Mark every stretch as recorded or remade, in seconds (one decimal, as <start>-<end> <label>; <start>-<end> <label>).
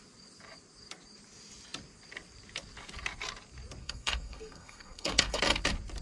0.0-3.8 recorded; 3.8-5.4 remade; 5.4-6.0 recorded